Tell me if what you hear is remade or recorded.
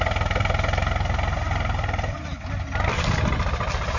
recorded